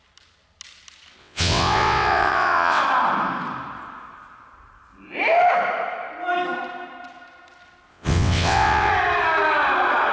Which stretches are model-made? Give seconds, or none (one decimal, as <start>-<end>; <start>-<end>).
1.2-2.8; 7.9-8.9